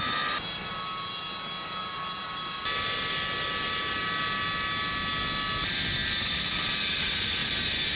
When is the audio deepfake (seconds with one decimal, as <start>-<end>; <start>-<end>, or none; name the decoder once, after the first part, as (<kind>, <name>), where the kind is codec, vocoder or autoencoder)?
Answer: 6.0-6.6 (vocoder, BigVGAN v2); 7.4-8.0